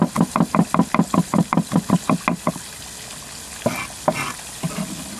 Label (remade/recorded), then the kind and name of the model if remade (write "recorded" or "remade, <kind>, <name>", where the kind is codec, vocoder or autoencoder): recorded